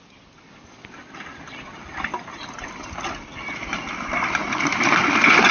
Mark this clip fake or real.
real